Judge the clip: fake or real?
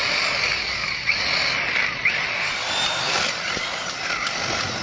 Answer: real